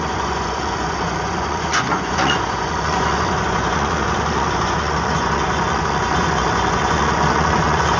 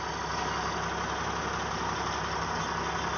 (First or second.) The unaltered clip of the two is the second